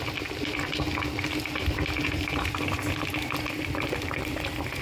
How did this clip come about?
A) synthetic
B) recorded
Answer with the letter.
B